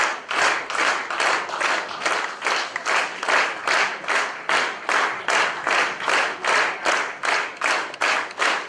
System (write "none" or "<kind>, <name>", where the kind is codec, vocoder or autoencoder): none